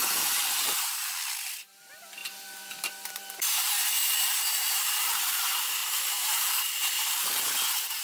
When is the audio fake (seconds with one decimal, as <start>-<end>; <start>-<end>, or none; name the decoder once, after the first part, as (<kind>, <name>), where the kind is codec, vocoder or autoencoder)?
0.0-8.0 (vocoder, BigVGAN v2)